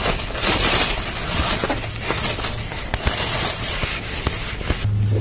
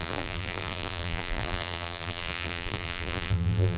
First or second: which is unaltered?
first